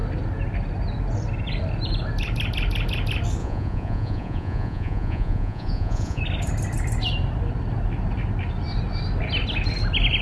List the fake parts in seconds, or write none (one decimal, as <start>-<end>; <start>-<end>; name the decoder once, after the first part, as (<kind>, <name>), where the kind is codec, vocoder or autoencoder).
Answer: 3.4-6.2 (vocoder, Vocos)